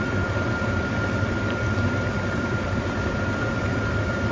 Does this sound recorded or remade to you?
remade